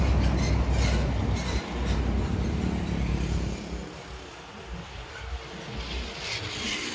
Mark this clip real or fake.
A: real